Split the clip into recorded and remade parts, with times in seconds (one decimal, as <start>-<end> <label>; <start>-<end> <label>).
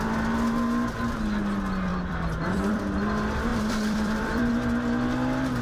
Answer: 0.0-1.9 recorded; 1.9-2.8 remade; 2.8-3.5 recorded; 3.5-4.5 remade; 4.5-5.6 recorded